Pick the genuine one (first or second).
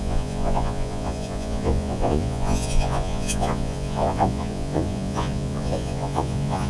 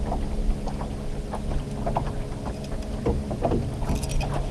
second